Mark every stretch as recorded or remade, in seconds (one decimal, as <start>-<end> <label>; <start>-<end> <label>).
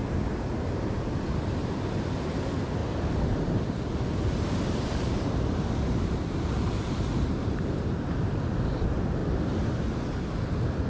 0.0-2.4 recorded; 2.4-9.2 remade; 9.2-10.9 recorded